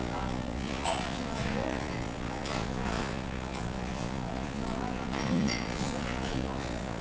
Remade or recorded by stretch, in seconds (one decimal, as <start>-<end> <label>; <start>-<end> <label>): 0.0-7.0 remade